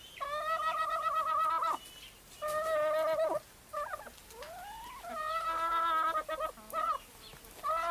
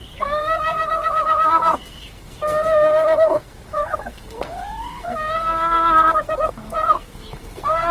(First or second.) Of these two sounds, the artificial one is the second